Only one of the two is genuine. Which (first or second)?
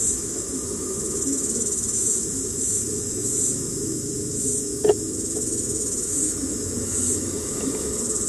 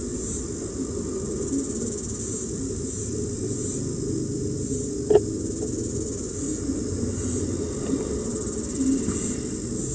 second